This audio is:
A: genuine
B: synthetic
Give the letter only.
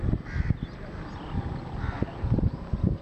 A